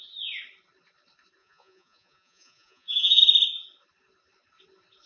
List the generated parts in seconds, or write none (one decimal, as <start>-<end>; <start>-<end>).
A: 1.4-3.2